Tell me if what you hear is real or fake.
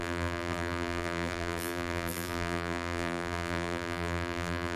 fake